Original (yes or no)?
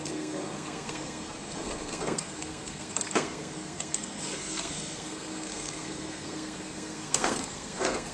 no